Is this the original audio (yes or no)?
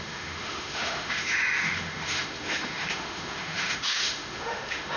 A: no